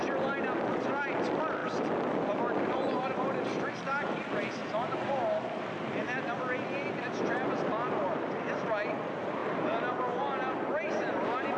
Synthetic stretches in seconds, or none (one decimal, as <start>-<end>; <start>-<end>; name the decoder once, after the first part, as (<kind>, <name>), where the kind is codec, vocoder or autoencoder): none